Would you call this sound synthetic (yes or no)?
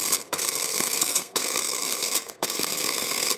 yes